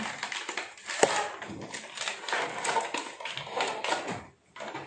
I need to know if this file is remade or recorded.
recorded